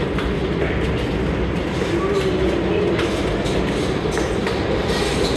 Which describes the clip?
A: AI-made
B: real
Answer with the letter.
B